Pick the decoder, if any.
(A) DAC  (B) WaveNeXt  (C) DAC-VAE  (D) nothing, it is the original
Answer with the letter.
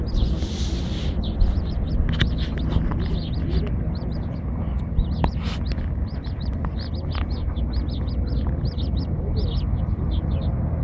D